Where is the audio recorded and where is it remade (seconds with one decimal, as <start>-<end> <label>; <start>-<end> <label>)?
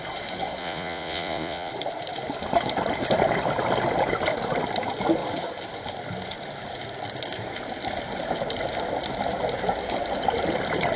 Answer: 0.0-0.6 recorded; 0.6-1.7 remade; 1.7-11.0 recorded